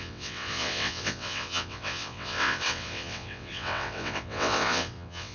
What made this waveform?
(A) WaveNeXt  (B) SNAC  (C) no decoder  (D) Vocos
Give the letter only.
A